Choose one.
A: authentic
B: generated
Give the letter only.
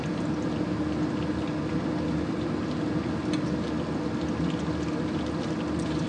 A